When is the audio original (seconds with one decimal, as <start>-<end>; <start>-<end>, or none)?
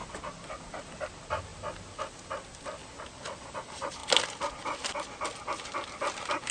0.0-6.5